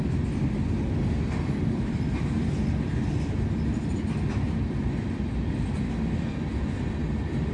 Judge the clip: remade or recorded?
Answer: recorded